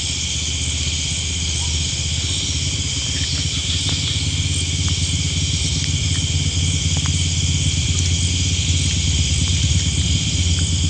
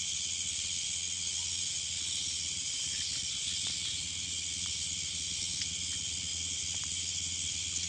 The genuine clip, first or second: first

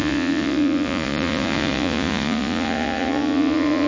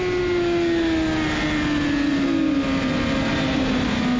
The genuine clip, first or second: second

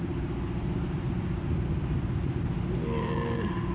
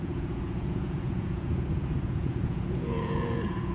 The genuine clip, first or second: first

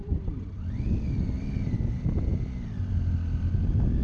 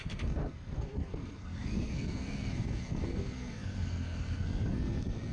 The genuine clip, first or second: first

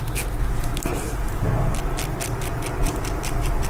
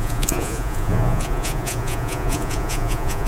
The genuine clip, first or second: first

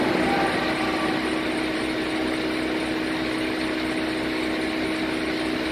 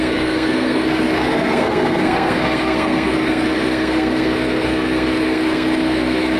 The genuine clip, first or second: first